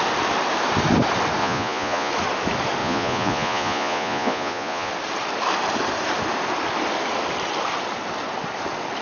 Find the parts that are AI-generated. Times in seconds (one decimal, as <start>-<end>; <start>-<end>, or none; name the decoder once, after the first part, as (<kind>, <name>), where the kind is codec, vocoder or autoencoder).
1.4-2.1 (vocoder, Vocos); 2.8-4.9